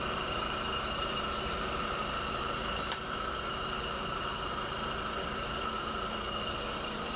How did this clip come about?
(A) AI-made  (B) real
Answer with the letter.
A